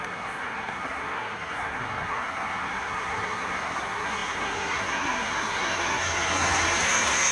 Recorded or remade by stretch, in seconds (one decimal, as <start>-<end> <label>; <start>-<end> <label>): 0.0-7.3 remade